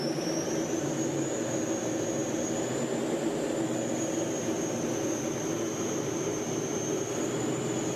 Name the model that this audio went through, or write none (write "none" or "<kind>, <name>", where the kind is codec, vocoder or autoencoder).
none